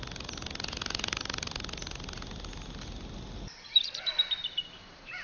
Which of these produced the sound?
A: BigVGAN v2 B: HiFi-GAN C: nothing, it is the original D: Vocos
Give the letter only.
A